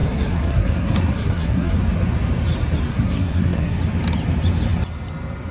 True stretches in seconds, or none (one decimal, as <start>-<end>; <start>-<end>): 1.8-2.9; 3.8-5.5

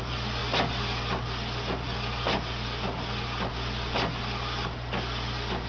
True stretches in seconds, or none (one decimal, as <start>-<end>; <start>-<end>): 0.0-5.7